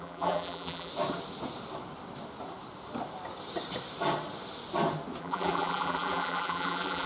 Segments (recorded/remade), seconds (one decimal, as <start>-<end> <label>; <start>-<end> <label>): 0.0-0.9 remade; 0.9-5.2 recorded; 5.2-7.1 remade